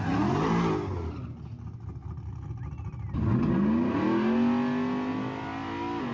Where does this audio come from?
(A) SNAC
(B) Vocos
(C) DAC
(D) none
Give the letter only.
D